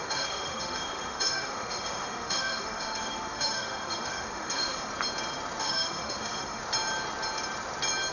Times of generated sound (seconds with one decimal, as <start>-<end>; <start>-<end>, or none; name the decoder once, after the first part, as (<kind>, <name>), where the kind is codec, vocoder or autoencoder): 0.0-4.9 (autoencoder, DAC-VAE); 5.6-6.6